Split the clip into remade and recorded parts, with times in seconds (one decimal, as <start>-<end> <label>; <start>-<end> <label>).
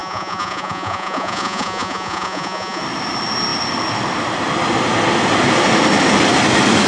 0.0-2.8 remade; 2.8-6.9 recorded